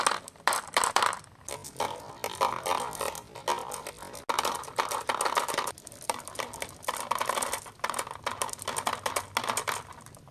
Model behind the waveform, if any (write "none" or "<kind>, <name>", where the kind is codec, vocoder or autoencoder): none